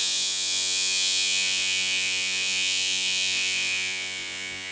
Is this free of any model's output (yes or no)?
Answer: no